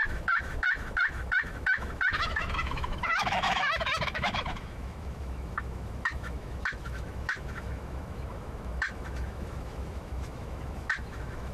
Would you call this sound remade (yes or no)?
yes